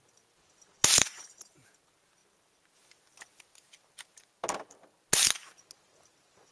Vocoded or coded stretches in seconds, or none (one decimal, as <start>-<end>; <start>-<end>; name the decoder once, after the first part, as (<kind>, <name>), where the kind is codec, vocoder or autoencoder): 0.8-1.7 (vocoder, BigVGAN v2)